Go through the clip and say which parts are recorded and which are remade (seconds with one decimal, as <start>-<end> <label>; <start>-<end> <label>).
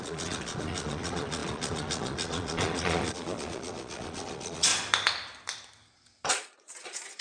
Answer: 0.0-4.7 remade; 4.7-6.3 recorded; 6.3-7.2 remade